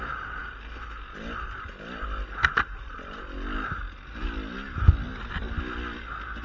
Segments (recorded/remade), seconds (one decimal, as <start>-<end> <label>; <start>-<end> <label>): 0.0-6.4 recorded